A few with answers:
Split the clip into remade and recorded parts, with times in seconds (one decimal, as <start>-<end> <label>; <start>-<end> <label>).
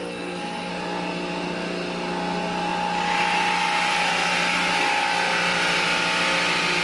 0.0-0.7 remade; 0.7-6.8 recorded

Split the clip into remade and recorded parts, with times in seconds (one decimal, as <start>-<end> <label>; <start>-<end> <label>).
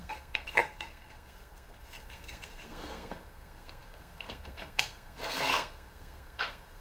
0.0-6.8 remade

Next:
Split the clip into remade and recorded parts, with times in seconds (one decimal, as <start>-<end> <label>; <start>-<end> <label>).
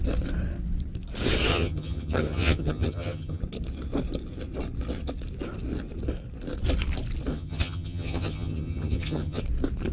0.0-1.5 recorded; 1.5-3.4 remade; 3.4-7.3 recorded; 7.3-9.4 remade; 9.4-9.9 recorded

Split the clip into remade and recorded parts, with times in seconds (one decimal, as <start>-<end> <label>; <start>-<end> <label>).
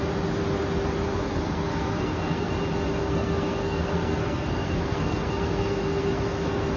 0.0-1.1 recorded; 1.1-2.5 remade; 2.5-3.0 recorded; 3.0-6.8 remade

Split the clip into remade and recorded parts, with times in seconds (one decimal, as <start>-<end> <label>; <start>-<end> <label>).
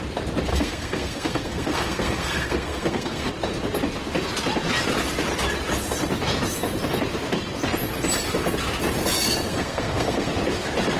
0.0-0.5 recorded; 0.5-3.3 remade; 3.3-9.5 recorded; 9.5-10.3 remade; 10.3-11.0 recorded